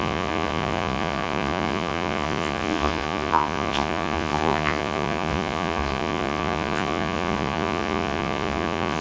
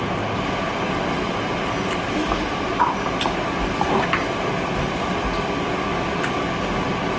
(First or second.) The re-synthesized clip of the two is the first